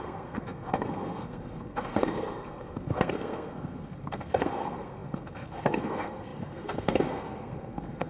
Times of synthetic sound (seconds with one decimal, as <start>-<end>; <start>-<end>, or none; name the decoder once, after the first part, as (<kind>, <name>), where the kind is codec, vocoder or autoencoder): 0.0-8.1 (codec, SNAC)